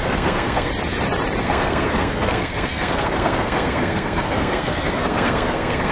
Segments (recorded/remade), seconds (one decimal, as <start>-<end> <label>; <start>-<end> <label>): 0.0-0.7 remade; 0.7-1.4 recorded; 1.4-5.9 remade

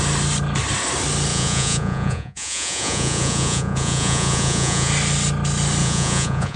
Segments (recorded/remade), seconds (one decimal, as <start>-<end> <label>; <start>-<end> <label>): 0.0-1.3 recorded; 1.3-4.9 remade; 4.9-5.8 recorded; 5.8-6.6 remade

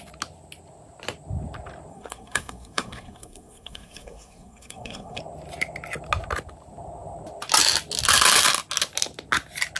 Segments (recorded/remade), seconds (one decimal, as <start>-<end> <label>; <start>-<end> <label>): 0.0-1.9 recorded; 1.9-5.2 remade; 5.2-9.8 recorded

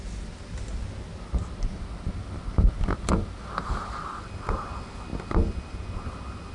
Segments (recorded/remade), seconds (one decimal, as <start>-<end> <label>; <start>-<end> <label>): 0.0-6.5 recorded

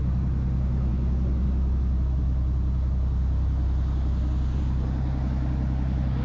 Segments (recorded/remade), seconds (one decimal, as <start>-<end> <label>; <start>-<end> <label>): 0.0-6.2 recorded

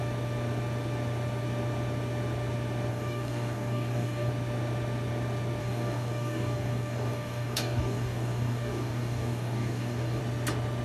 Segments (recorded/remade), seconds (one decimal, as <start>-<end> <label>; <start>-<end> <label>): 0.0-2.9 recorded; 2.9-4.3 remade; 4.3-5.6 recorded; 5.6-10.2 remade; 10.2-10.8 recorded

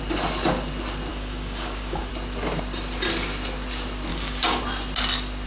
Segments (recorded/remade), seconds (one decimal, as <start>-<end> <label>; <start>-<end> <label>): 0.0-1.1 recorded; 1.1-2.1 remade; 2.1-4.1 recorded; 4.1-4.6 remade; 4.6-5.5 recorded